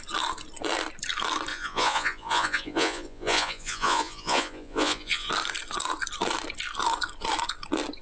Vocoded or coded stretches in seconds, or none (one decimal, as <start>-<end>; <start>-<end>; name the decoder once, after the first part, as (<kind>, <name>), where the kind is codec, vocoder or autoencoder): 1.5-5.3 (vocoder, Vocos)